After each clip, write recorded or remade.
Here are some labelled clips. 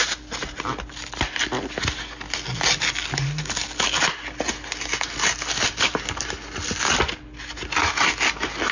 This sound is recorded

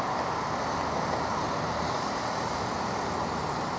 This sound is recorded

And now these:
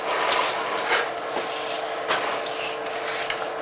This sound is recorded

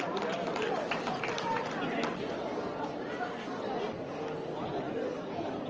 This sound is recorded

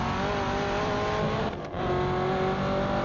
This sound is recorded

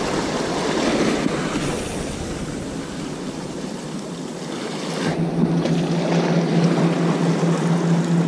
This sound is recorded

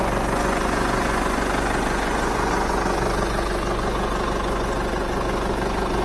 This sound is remade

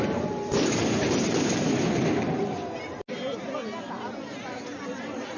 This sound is recorded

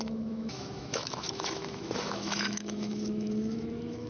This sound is remade